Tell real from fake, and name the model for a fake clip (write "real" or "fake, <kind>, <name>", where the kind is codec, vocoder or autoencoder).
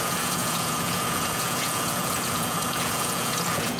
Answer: fake, vocoder, Vocos